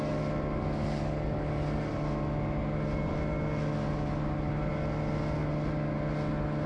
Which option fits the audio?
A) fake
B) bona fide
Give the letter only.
B